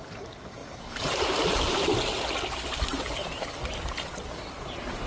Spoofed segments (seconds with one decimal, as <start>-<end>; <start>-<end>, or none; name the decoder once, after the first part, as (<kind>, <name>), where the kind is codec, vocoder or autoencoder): 0.0-3.2 (vocoder, BigVGAN v2); 3.9-5.1